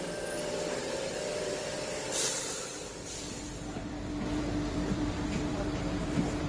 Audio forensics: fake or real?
fake